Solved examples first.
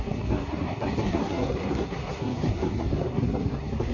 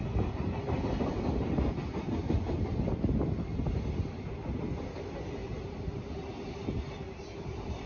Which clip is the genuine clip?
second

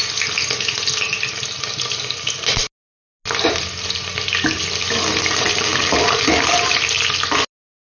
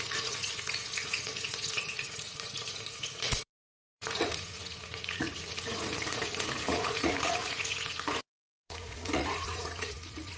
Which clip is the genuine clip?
first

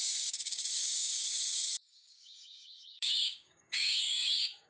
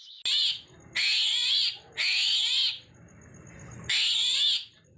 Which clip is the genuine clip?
second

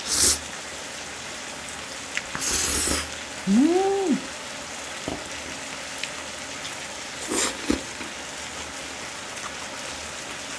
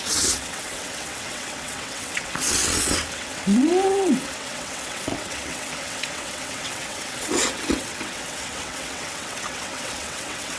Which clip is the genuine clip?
first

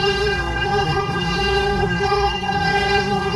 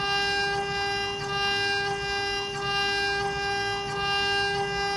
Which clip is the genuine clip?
second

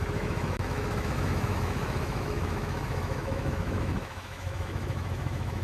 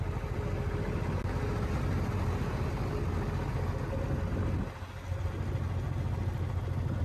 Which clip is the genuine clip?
second